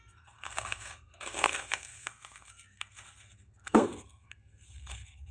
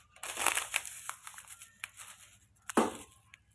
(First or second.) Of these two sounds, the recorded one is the second